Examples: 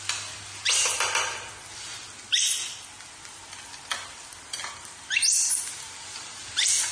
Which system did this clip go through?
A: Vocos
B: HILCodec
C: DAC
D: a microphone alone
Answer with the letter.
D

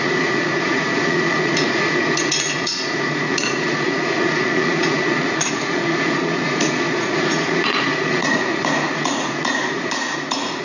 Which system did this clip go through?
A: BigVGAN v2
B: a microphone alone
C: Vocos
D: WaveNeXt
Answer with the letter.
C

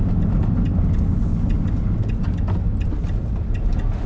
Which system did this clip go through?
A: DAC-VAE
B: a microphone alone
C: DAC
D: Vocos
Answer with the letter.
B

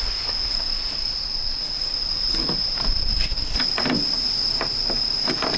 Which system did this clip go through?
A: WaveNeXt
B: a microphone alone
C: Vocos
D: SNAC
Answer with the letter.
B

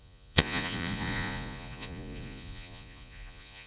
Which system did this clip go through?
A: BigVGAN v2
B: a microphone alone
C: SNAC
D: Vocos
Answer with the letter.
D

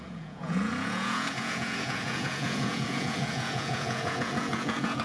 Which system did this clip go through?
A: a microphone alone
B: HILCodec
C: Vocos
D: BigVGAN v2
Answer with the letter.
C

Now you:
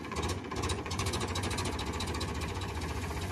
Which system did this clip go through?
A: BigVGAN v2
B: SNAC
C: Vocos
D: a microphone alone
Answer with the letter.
C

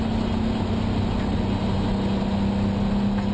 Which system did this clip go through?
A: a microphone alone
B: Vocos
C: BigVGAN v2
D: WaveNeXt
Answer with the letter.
A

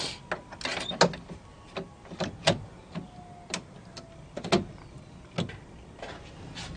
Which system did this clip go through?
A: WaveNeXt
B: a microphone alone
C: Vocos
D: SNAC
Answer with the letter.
B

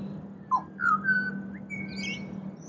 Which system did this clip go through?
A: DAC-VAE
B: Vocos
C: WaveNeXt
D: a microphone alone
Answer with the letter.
D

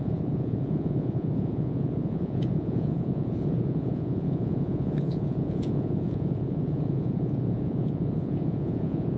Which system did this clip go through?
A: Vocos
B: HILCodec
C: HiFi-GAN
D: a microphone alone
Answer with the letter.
A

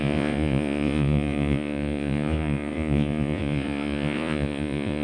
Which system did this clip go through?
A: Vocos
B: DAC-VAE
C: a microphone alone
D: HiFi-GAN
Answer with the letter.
A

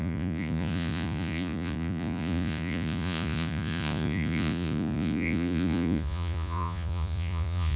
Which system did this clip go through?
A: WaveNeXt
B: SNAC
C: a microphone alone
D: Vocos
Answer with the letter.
D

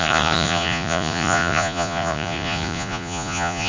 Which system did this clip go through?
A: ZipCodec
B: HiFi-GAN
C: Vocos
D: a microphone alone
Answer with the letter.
C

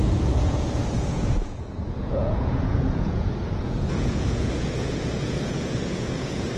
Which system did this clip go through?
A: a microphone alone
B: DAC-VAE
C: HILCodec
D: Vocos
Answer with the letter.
D